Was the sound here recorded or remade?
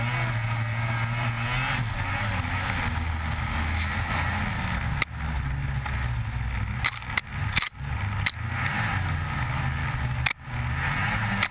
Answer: recorded